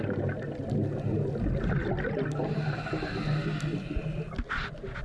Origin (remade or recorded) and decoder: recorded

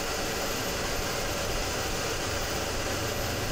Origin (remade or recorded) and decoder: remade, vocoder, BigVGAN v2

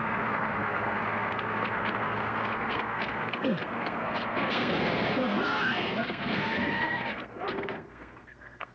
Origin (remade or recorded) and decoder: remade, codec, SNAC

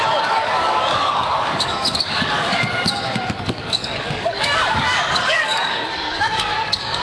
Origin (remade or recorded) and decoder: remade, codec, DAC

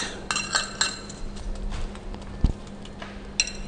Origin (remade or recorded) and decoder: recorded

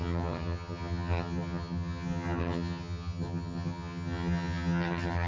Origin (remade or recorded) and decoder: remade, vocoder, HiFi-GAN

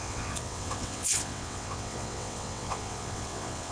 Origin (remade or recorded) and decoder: remade, vocoder, WaveNeXt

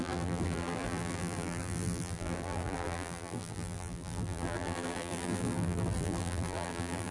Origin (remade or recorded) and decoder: remade, vocoder, BigVGAN v2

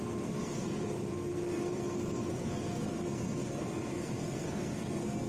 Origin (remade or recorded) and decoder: remade, codec, SNAC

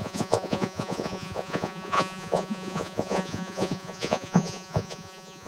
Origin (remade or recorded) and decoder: remade, vocoder, Vocos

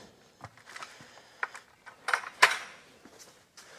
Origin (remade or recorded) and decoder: recorded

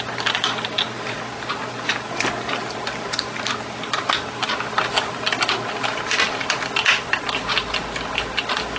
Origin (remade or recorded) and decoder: recorded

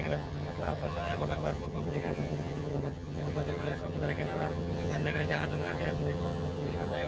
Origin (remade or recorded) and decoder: remade, vocoder, HiFi-GAN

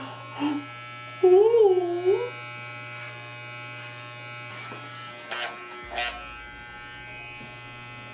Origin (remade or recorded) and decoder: recorded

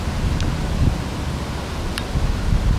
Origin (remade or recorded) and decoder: recorded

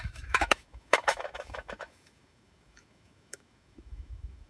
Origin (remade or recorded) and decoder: remade, autoencoder, DAC-VAE